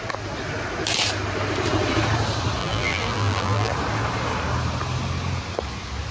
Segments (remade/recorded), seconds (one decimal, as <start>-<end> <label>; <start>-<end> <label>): 0.0-2.6 recorded; 2.6-3.7 remade; 3.7-6.1 recorded

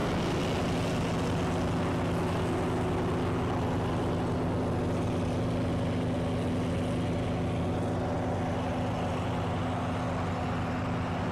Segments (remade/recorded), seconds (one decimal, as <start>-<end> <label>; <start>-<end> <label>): 0.0-11.3 recorded